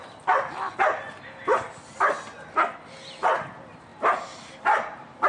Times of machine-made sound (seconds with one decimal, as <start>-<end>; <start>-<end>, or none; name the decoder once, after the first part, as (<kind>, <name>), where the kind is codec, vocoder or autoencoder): none